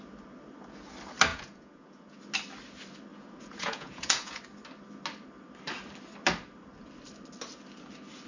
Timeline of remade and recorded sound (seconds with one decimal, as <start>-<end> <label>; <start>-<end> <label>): 0.0-1.3 recorded; 1.3-2.2 remade; 2.2-3.1 recorded; 3.1-4.4 remade; 4.4-8.3 recorded